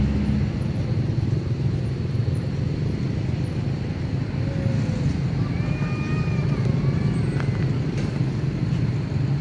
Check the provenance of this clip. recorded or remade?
recorded